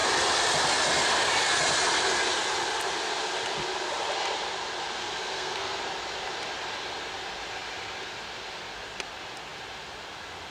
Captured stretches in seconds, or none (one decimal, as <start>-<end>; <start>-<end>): 0.0-5.0; 5.8-10.5